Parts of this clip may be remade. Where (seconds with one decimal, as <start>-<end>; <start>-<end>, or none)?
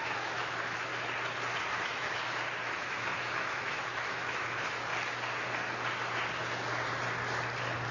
0.0-0.9; 1.6-2.2; 2.7-4.9